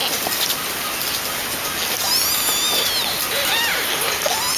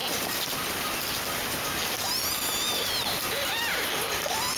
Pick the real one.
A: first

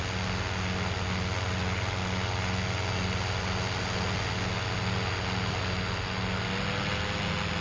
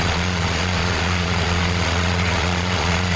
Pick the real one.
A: first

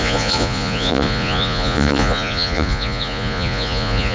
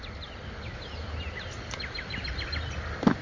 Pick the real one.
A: second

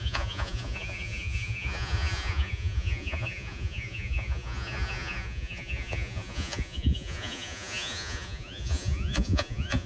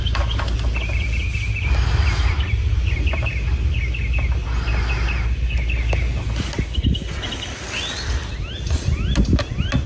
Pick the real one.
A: second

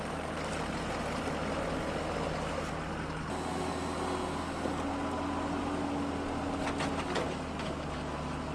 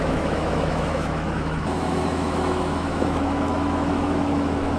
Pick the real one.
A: first